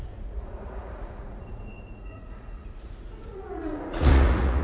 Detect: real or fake fake